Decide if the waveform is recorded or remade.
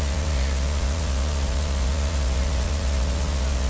remade